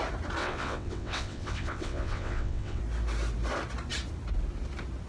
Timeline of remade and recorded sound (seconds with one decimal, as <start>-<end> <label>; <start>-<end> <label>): 0.0-0.4 recorded; 0.4-2.8 remade; 2.8-5.1 recorded